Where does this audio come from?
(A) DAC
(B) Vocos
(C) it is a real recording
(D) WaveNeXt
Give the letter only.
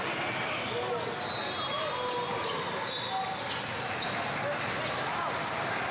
C